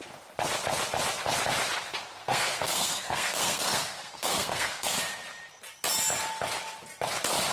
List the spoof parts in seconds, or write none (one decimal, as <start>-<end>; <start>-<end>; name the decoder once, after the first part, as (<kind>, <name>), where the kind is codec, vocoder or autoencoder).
2.2-5.0 (codec, SNAC)

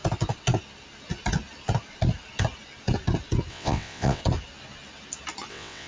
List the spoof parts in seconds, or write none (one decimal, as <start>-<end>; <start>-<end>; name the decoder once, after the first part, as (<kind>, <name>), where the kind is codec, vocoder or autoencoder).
3.5-4.2 (vocoder, WaveNeXt); 5.5-5.9

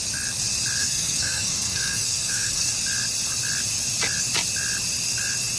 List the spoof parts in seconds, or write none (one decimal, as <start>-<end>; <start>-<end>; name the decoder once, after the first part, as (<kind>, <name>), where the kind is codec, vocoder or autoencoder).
0.8-2.7 (codec, SNAC)

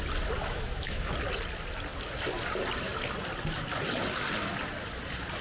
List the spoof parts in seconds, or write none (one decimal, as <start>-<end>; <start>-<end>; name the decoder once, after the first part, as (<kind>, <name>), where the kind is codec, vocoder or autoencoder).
0.4-1.1 (autoencoder, DAC-VAE)

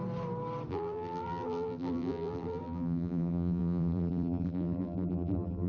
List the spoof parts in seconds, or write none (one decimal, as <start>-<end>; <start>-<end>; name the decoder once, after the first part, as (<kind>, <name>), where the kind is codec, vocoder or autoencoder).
0.7-5.7 (vocoder, BigVGAN v2)

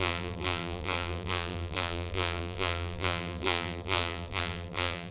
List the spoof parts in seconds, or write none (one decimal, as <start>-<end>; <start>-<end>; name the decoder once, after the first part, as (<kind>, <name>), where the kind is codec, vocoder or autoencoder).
0.0-5.1 (vocoder, BigVGAN v2)

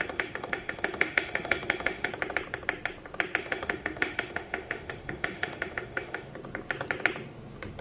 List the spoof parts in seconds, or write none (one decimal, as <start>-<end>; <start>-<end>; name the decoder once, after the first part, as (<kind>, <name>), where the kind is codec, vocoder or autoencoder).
0.0-2.1 (autoencoder, DAC-VAE); 3.4-6.3